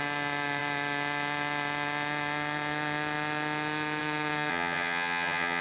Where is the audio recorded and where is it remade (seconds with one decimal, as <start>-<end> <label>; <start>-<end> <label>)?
0.0-4.5 recorded; 4.5-5.6 remade